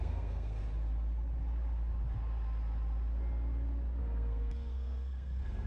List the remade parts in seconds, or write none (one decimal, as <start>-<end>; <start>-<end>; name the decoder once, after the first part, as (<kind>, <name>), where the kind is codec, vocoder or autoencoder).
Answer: 0.0-0.6 (codec, SNAC); 4.0-5.7